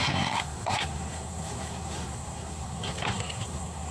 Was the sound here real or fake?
fake